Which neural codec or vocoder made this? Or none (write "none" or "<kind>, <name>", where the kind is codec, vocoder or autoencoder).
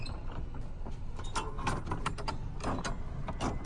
none